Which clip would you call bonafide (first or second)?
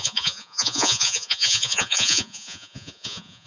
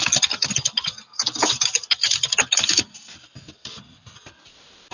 second